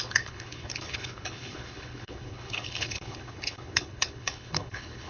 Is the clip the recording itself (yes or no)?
no